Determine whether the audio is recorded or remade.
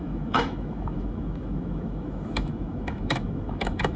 remade